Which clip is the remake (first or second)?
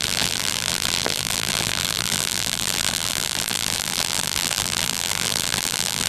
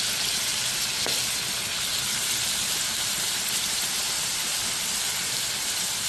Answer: first